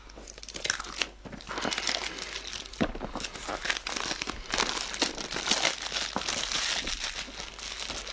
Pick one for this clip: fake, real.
real